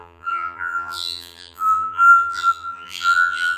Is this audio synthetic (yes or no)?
yes